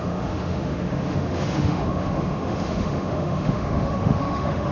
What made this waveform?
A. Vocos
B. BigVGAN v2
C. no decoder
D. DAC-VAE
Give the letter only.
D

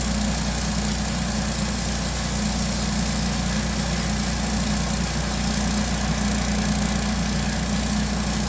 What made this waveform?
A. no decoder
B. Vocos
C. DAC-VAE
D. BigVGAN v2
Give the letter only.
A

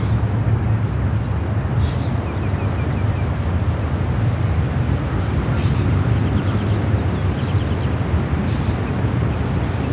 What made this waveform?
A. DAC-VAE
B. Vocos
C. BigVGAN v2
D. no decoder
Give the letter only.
D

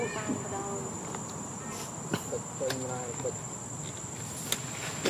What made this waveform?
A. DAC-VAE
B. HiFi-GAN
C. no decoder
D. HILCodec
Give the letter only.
C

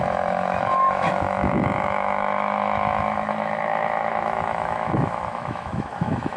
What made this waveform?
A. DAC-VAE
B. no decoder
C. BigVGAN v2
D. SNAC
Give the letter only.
A